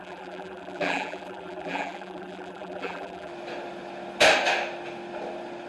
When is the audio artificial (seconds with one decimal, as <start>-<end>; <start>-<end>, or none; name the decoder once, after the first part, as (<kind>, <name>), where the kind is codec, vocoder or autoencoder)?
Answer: 0.0-3.3 (vocoder, BigVGAN v2)